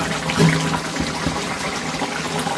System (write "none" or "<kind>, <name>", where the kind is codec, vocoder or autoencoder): none